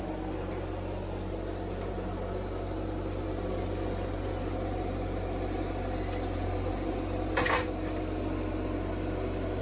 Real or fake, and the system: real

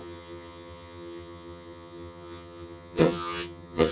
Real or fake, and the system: fake, vocoder, HiFi-GAN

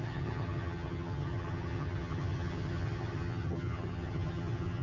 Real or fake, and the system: fake, vocoder, HiFi-GAN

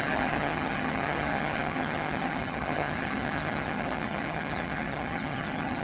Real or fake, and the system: fake, vocoder, HiFi-GAN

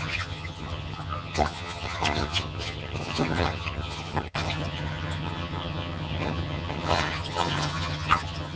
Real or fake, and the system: fake, vocoder, HiFi-GAN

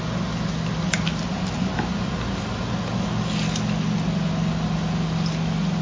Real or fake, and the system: real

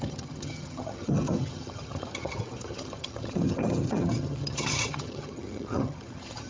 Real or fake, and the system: fake, vocoder, HiFi-GAN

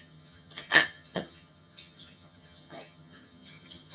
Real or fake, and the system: fake, vocoder, HiFi-GAN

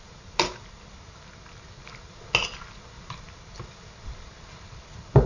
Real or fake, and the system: real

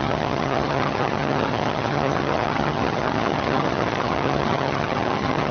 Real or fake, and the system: fake, vocoder, HiFi-GAN